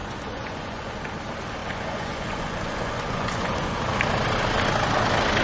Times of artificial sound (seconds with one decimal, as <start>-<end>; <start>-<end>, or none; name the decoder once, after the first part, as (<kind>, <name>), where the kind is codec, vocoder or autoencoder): 0.0-1.0 (vocoder, Vocos); 1.6-3.8